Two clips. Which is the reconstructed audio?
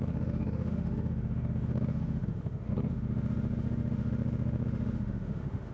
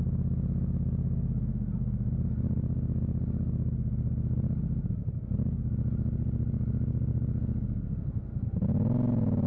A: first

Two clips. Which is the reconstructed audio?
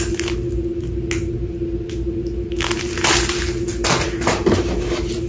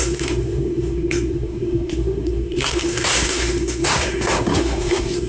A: second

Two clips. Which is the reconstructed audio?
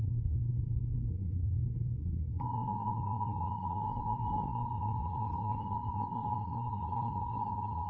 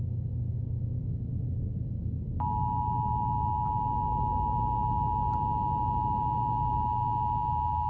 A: first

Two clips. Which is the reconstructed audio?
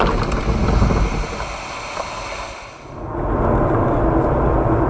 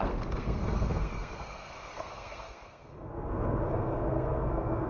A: second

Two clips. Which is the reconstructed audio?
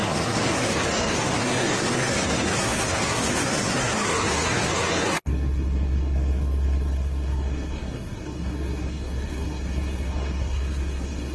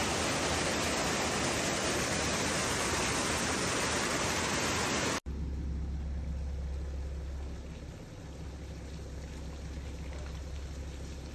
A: first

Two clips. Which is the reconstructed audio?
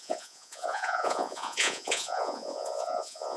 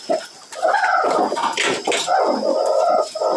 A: first